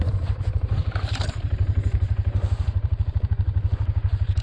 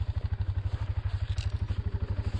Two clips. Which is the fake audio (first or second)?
first